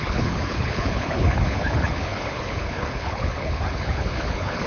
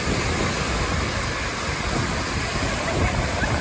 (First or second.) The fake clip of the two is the first